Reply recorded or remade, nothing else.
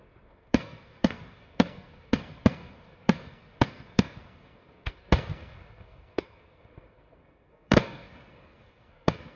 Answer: remade